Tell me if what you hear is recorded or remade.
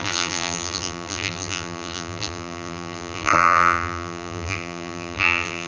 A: remade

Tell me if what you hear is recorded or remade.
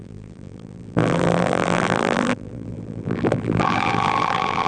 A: remade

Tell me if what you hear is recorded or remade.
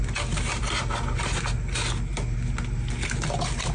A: recorded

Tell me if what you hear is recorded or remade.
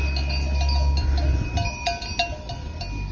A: recorded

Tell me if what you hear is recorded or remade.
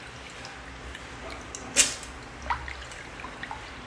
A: recorded